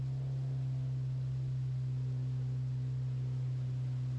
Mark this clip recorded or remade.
recorded